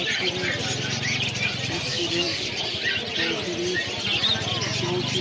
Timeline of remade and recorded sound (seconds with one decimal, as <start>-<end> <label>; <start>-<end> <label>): 0.0-1.9 recorded; 1.9-2.5 remade; 2.5-5.2 recorded